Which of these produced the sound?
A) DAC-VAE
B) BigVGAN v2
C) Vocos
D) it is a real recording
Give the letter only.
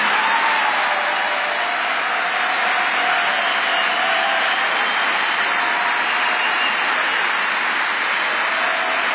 D